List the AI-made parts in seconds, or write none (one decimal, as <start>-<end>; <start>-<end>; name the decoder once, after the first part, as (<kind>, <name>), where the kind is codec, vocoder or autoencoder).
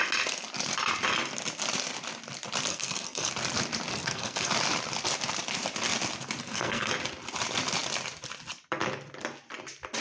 2.7-3.3 (codec, SNAC); 3.9-4.5; 6.4-6.9